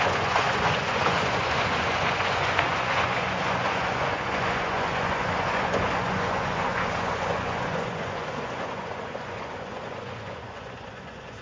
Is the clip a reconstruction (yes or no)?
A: yes